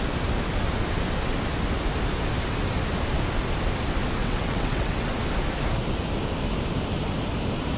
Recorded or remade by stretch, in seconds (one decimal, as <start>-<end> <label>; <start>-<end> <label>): 0.0-4.2 recorded; 4.2-5.1 remade; 5.1-7.8 recorded